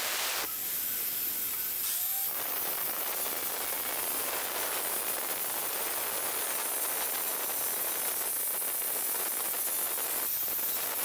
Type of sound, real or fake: real